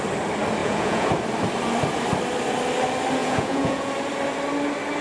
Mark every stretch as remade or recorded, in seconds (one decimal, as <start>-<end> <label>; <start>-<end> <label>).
0.0-0.6 recorded; 0.6-1.1 remade; 1.1-3.2 recorded; 3.2-3.9 remade; 3.9-5.0 recorded